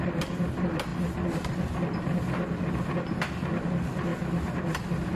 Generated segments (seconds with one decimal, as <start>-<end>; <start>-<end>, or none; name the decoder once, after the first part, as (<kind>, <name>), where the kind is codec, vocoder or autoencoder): none